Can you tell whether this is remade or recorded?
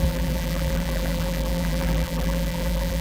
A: remade